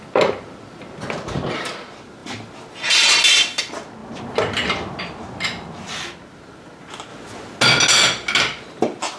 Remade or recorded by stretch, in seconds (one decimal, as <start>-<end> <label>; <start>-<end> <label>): 0.0-9.2 recorded